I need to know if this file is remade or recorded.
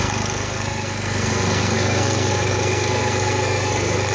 remade